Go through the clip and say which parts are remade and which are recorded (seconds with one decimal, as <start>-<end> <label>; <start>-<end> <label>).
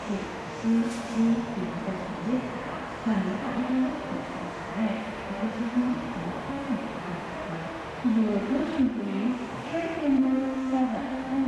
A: 0.0-1.2 remade; 1.2-3.6 recorded; 3.6-11.5 remade